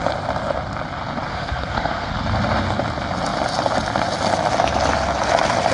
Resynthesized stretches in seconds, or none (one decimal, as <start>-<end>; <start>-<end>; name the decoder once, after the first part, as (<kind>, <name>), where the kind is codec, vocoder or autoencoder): 1.3-2.1 (codec, SNAC)